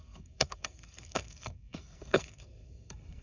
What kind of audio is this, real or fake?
fake